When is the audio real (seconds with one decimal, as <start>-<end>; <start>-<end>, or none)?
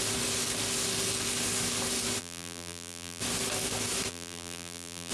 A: 0.0-2.2; 3.2-4.1